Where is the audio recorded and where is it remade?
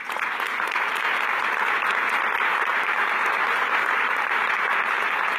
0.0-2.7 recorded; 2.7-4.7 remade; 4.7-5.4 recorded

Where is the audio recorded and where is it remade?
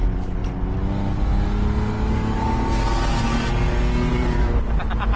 0.0-4.1 recorded; 4.1-4.6 remade; 4.6-5.2 recorded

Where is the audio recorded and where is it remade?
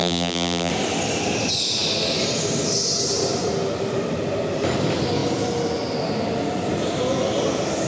0.0-0.7 remade; 0.7-7.9 recorded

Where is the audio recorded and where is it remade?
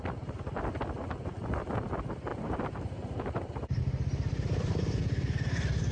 0.0-2.3 recorded; 2.3-3.8 remade; 3.8-5.9 recorded